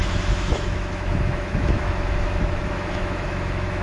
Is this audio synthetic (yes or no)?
yes